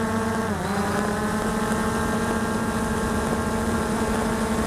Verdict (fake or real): real